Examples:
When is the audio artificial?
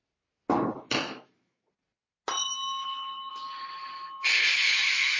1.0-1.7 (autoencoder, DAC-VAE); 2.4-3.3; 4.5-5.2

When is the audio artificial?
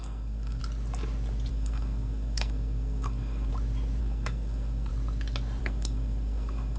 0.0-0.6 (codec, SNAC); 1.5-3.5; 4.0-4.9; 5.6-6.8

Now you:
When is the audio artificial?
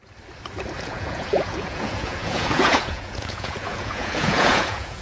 0.8-5.0 (vocoder, Vocos)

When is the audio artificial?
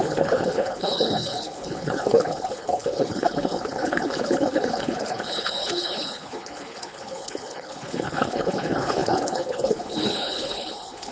0.0-11.1 (codec, HILCodec)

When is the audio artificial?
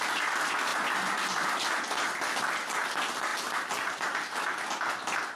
none